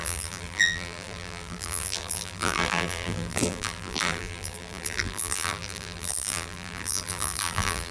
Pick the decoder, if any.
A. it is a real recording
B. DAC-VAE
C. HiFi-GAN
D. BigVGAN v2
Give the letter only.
D